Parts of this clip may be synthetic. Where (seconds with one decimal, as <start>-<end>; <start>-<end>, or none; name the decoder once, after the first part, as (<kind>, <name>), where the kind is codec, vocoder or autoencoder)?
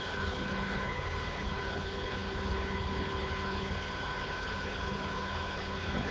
0.0-6.1 (codec, HILCodec)